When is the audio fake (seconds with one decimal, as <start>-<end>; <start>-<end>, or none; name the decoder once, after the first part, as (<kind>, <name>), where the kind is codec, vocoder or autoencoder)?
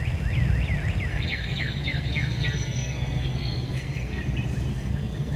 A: 1.1-4.2 (codec, SNAC); 4.7-5.4